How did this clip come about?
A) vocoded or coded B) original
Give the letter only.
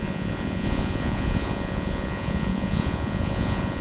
A